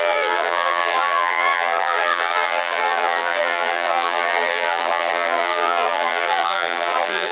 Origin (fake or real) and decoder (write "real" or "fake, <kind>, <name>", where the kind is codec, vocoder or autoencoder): fake, vocoder, BigVGAN v2